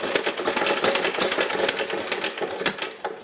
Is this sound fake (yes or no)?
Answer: no